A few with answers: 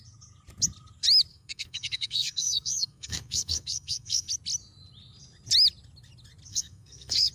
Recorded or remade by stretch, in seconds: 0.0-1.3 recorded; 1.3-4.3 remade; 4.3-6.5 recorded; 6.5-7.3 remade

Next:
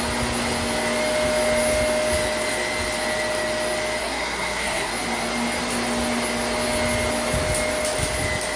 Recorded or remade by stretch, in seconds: 0.0-4.0 recorded; 4.0-4.9 remade; 4.9-8.6 recorded

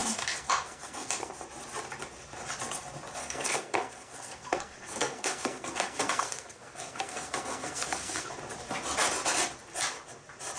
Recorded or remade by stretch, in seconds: 0.0-1.3 remade; 1.3-3.2 recorded; 3.2-8.3 remade; 8.3-10.6 recorded

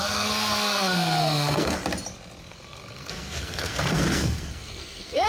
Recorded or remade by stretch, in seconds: 0.0-1.8 remade; 1.8-2.4 recorded; 2.4-5.3 remade

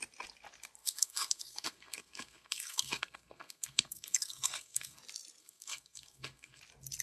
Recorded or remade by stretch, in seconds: 0.0-0.8 recorded; 0.8-5.0 remade; 5.0-5.4 recorded; 5.4-6.6 remade; 6.6-7.0 recorded

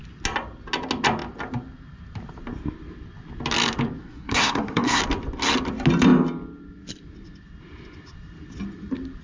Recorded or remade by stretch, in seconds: 0.0-4.0 recorded; 4.0-5.0 remade; 5.0-9.2 recorded